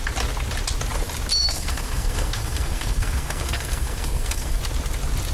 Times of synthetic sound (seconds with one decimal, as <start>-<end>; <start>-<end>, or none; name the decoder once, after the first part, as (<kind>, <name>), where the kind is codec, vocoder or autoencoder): 1.4-4.6 (codec, SNAC)